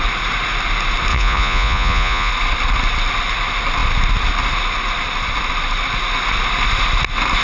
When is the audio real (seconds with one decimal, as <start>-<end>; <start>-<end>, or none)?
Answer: 0.0-1.1; 2.3-7.4